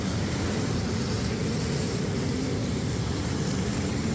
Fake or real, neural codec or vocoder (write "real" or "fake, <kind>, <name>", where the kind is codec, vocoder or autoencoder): fake, vocoder, BigVGAN v2